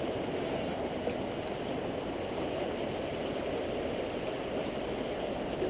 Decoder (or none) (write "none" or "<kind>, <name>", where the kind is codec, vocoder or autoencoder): none